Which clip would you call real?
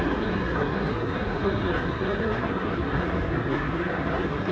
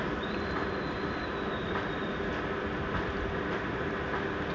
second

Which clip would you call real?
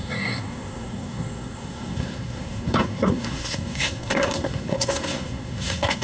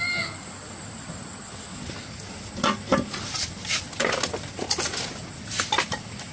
second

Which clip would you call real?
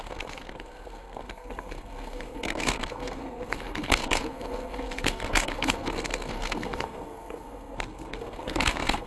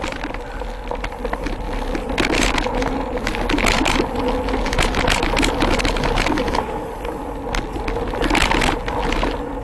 second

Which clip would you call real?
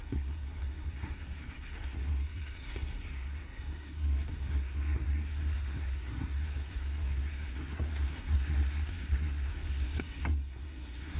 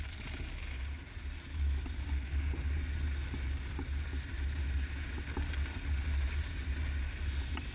second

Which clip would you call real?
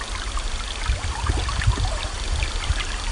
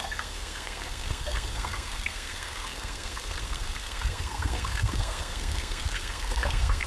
first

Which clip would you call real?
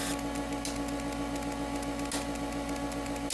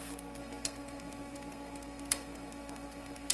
first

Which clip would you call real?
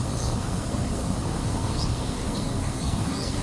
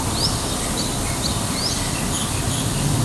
second